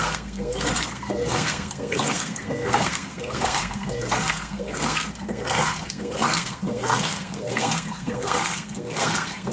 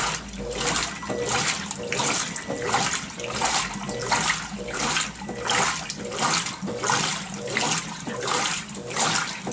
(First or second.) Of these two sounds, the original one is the second